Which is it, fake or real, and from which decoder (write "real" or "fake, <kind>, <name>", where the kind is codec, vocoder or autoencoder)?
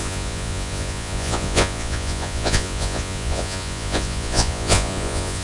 fake, vocoder, Vocos